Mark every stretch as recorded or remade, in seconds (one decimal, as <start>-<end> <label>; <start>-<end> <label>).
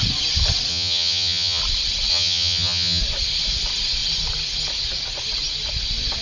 0.0-0.7 recorded; 0.7-1.6 remade; 1.6-2.1 recorded; 2.1-3.0 remade; 3.0-6.2 recorded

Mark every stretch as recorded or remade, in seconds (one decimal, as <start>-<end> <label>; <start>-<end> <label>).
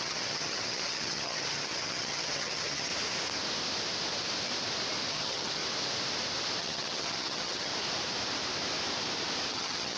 0.0-2.9 remade; 2.9-5.1 recorded; 5.1-5.6 remade; 5.6-6.6 recorded; 6.6-7.7 remade; 7.7-9.5 recorded; 9.5-10.0 remade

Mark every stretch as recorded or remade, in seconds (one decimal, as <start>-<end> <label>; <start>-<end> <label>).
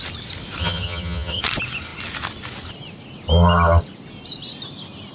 0.0-0.6 recorded; 0.6-1.4 remade; 1.4-5.1 recorded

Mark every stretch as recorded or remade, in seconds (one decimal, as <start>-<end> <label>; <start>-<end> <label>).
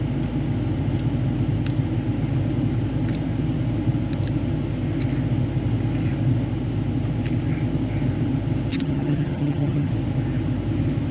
0.0-8.7 recorded; 8.7-9.9 remade; 9.9-11.1 recorded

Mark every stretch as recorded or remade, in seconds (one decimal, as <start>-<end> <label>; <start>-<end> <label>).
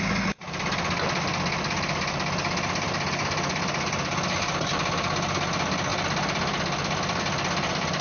0.0-8.0 recorded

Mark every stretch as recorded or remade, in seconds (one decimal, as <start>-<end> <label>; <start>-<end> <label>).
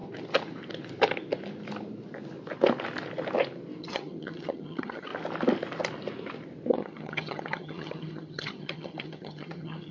0.0-3.8 recorded; 3.8-5.1 remade; 5.1-6.7 recorded; 6.7-9.9 remade